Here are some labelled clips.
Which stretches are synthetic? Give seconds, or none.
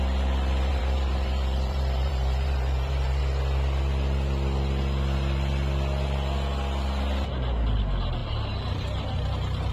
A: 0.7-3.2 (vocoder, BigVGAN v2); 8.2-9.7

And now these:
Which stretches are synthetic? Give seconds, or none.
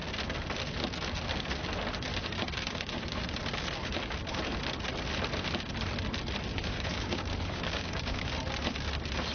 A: 2.1-3.4 (codec, DAC); 6.5-8.3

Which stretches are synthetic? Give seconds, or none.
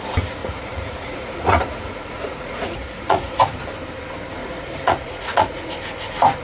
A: 0.4-3.4 (vocoder, Vocos); 4.4-5.7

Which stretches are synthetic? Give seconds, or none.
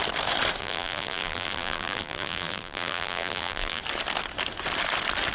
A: 0.6-3.8 (vocoder, BigVGAN v2)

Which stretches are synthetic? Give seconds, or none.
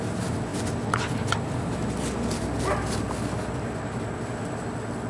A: none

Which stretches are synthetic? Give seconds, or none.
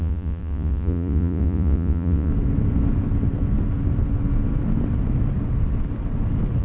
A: 0.0-2.3 (vocoder, Vocos)